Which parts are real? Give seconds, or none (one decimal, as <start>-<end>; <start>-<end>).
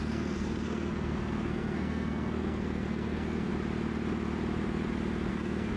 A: 3.5-5.3